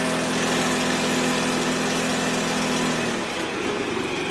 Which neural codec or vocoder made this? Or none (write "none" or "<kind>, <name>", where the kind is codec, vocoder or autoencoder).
none